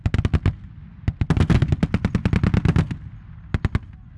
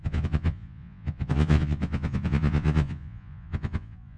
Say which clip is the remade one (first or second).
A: second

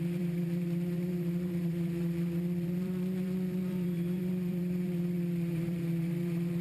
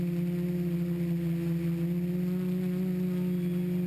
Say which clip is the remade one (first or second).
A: first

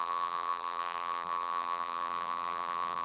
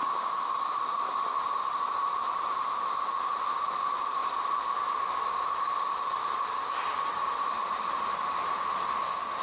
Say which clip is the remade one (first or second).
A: first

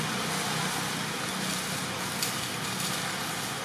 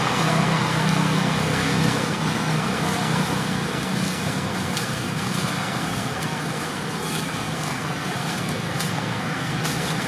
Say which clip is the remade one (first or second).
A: second